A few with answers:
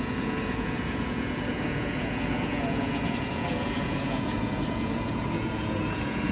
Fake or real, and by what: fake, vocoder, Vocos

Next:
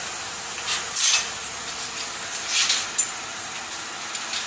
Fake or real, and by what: real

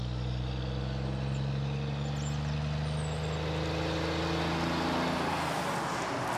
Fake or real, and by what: real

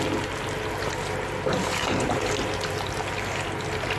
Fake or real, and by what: real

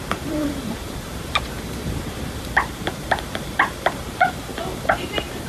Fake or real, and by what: fake, vocoder, BigVGAN v2